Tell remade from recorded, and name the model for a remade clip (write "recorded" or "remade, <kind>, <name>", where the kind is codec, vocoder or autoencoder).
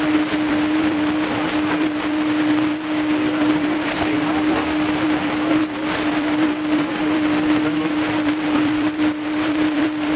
remade, vocoder, BigVGAN v2